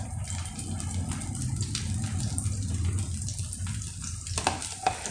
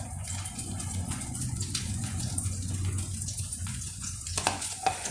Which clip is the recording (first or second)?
first